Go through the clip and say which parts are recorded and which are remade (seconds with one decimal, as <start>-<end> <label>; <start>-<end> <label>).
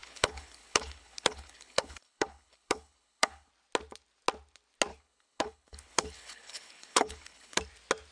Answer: 0.0-3.5 remade; 3.5-4.9 recorded; 4.9-7.6 remade; 7.6-8.1 recorded